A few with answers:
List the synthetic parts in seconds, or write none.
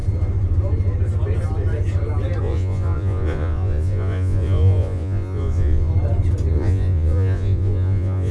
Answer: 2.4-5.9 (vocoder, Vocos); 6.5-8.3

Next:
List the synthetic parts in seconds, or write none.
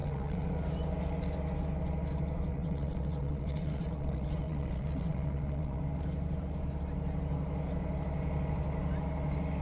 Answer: 0.0-0.5 (vocoder, WaveNeXt); 2.5-5.8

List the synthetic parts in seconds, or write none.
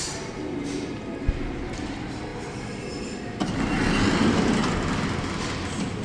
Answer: none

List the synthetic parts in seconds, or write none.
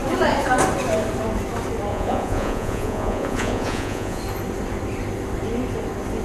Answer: 1.9-4.2 (vocoder, Vocos)